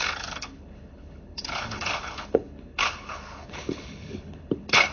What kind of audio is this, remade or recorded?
remade